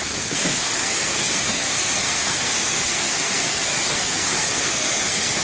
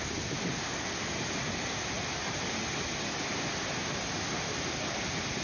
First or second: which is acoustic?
second